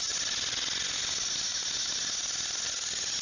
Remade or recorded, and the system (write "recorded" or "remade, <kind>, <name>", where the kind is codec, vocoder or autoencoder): recorded